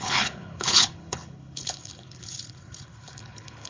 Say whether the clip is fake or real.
fake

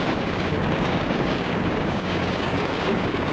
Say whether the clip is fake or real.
fake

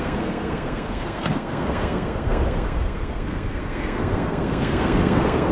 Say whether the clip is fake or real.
fake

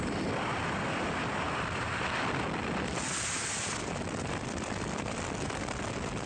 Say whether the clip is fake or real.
fake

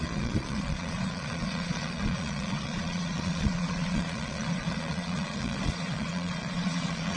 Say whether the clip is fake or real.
fake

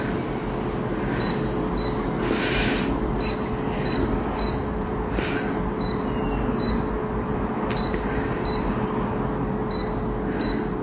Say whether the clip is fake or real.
real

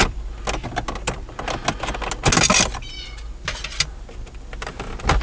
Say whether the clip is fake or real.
real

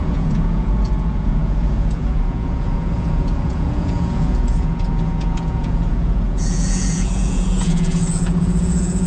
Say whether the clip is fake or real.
fake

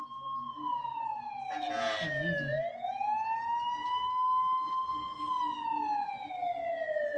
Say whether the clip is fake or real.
real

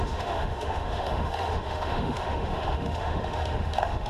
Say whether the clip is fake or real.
fake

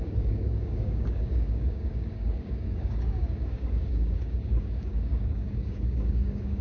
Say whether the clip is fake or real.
fake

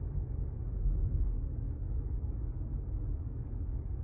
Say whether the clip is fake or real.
fake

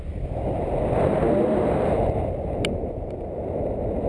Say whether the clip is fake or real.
real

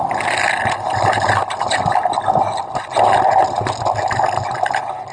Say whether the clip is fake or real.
real